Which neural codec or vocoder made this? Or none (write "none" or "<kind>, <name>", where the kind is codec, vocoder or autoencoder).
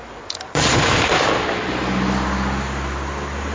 none